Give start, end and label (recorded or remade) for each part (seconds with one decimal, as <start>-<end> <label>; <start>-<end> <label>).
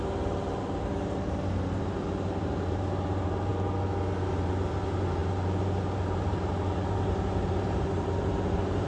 0.0-3.5 remade; 3.5-4.3 recorded; 4.3-8.9 remade